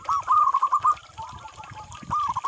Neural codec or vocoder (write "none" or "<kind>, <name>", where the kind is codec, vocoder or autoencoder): none